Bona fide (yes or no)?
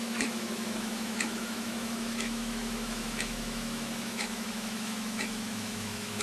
no